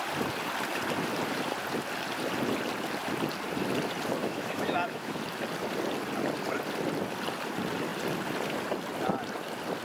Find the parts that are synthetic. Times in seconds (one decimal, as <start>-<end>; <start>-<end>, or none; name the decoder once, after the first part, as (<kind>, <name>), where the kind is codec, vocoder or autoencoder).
4.2-5.2 (autoencoder, DAC-VAE)